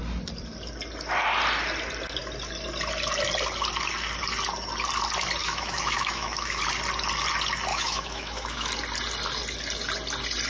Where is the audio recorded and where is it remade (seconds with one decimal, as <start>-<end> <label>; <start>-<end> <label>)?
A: 0.0-5.4 recorded; 5.4-6.6 remade; 6.6-7.7 recorded; 7.7-8.7 remade; 8.7-10.5 recorded